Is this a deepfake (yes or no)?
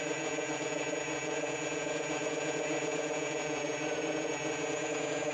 yes